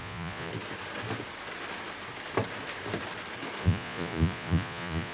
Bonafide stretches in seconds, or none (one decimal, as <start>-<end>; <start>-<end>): 0.5-3.6